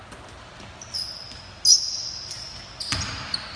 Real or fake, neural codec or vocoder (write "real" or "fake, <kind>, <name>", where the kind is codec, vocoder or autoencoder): real